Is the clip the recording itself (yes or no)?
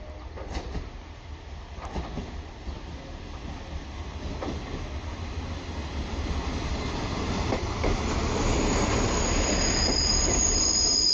yes